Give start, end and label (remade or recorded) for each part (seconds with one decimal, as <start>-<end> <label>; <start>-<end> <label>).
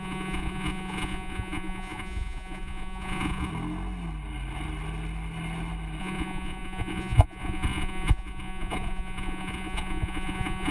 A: 0.0-3.5 remade; 3.5-6.0 recorded; 6.0-10.7 remade